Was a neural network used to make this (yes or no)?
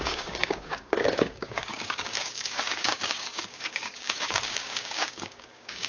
yes